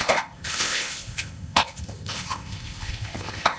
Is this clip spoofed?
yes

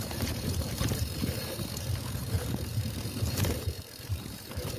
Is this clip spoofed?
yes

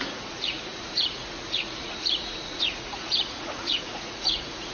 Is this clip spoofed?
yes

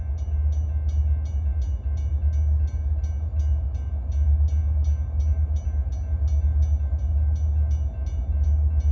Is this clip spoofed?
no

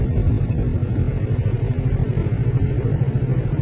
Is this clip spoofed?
no